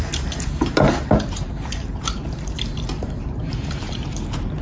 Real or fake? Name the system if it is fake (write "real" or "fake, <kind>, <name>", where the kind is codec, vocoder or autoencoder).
fake, vocoder, BigVGAN v2